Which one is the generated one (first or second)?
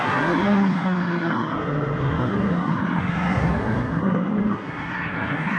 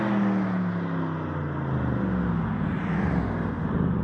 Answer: first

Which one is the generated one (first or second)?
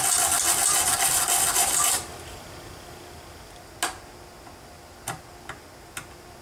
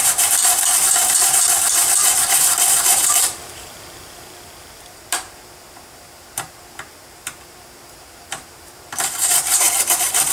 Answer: second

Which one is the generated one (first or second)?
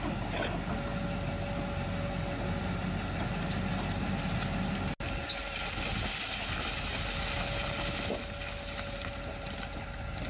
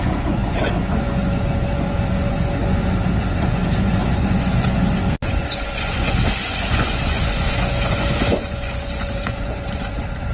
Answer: second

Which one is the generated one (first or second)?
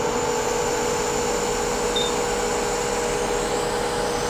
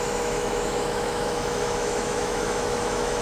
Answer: second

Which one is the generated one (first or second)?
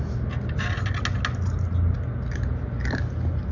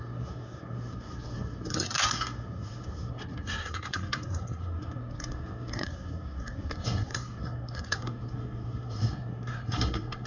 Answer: second